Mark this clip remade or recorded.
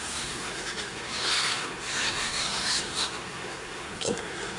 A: remade